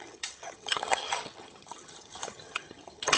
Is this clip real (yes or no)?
no